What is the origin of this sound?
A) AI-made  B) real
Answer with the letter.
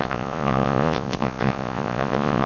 A